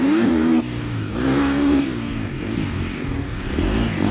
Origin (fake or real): fake